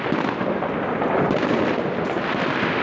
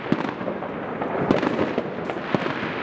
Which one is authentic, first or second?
second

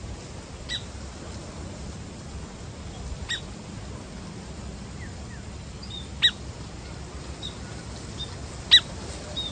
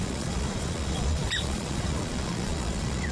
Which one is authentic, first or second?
first